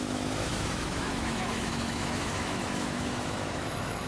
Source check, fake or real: fake